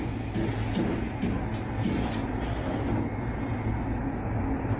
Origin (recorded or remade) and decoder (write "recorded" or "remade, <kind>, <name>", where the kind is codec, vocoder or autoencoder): recorded